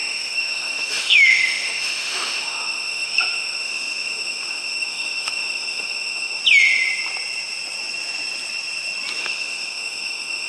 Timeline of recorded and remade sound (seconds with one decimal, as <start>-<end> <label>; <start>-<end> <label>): 0.0-6.4 remade; 6.4-9.2 recorded; 9.2-10.5 remade